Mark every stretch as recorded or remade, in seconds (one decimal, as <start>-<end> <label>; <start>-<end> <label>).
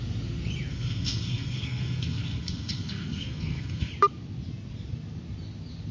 0.0-0.7 recorded; 0.7-3.9 remade; 3.9-5.9 recorded